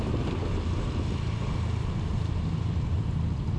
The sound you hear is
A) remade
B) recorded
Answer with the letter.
A